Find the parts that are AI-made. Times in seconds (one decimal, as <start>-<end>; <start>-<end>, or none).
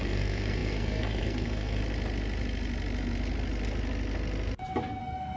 0.0-1.8; 5.0-5.4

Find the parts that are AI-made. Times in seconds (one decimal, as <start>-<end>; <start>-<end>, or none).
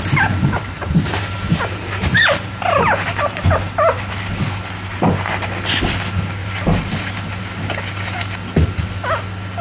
0.4-4.1; 6.4-7.3